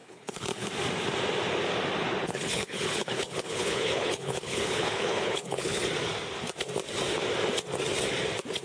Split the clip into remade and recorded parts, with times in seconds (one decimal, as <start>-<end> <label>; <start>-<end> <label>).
0.0-0.7 remade; 0.7-2.2 recorded; 2.2-5.8 remade; 5.8-8.6 recorded